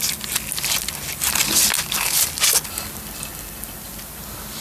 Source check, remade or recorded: recorded